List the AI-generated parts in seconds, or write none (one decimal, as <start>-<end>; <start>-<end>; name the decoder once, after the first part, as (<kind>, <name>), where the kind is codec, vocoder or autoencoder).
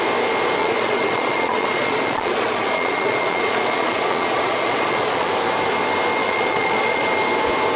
0.6-5.3 (vocoder, Vocos); 6.2-7.1